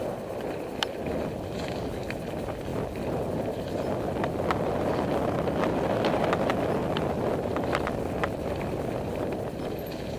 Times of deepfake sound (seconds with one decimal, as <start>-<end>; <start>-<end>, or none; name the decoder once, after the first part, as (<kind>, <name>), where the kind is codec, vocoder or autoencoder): none